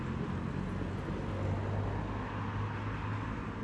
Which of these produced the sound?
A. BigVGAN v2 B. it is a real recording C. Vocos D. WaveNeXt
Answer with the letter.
B